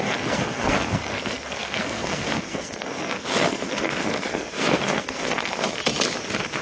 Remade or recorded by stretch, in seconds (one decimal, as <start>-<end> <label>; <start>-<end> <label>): 0.0-5.8 remade; 5.8-6.6 recorded